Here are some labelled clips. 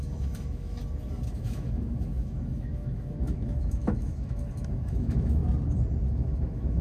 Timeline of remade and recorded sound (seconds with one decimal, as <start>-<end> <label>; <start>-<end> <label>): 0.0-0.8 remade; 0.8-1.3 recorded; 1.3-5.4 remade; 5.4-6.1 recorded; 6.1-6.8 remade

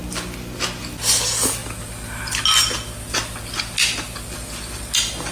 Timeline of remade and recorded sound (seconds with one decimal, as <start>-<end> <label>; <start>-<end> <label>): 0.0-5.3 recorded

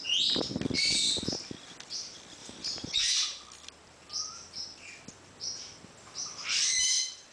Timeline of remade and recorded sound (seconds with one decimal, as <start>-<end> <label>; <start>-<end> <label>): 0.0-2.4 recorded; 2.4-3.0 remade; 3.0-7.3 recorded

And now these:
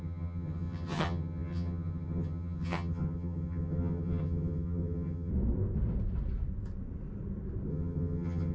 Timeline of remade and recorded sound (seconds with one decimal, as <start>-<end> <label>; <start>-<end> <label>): 0.0-5.3 remade; 5.3-7.7 recorded; 7.7-8.5 remade